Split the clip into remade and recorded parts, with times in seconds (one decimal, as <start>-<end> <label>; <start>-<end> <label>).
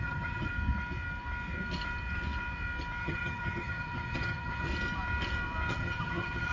0.0-0.5 remade; 0.5-3.0 recorded; 3.0-4.7 remade; 4.7-5.7 recorded; 5.7-6.5 remade